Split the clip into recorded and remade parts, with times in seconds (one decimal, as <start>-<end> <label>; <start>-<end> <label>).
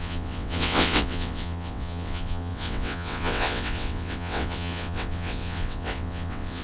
0.0-6.6 remade